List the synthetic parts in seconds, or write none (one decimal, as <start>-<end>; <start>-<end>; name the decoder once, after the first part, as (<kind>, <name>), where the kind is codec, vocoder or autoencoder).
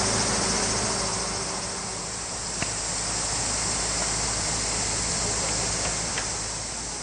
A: none